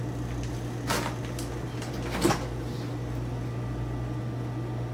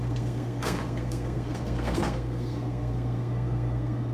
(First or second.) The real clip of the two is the first